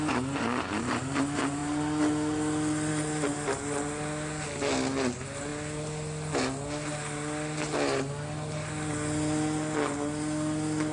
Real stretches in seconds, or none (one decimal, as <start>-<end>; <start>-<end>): 0.0-10.9